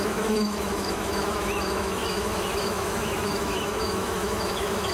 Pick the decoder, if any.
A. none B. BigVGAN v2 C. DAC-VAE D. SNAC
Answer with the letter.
C